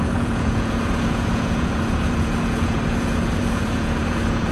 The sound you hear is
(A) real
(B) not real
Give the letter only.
B